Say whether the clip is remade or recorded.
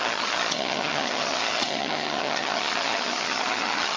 remade